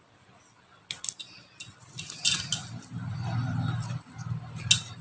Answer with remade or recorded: recorded